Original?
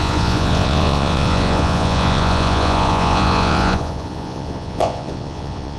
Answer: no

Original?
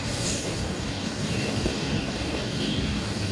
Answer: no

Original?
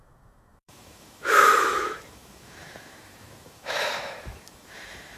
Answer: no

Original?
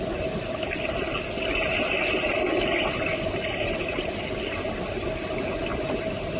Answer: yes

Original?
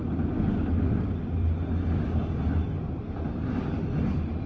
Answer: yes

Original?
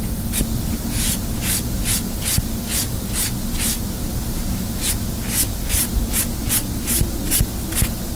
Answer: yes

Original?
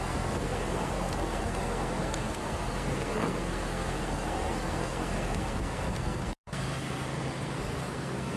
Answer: no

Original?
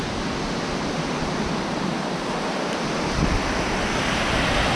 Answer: yes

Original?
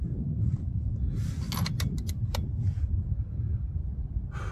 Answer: yes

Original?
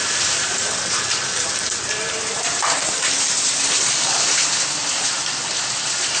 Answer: no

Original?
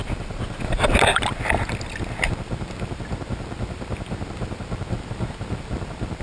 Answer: yes